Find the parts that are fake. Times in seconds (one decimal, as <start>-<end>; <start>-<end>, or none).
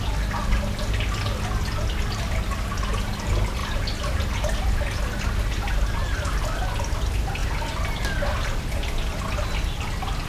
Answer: none